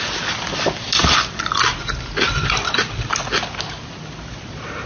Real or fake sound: real